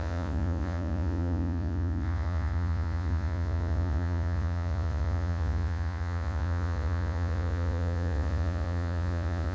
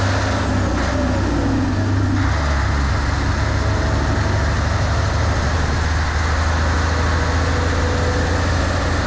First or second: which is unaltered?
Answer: second